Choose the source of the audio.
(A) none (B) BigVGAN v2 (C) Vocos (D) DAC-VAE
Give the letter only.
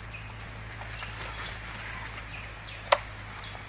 A